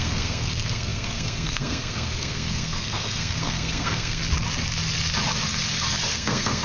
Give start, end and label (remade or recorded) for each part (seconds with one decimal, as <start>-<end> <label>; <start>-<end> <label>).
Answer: 0.0-4.2 remade; 4.2-6.1 recorded; 6.1-6.6 remade